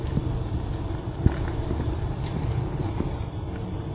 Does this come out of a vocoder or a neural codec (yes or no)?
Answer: yes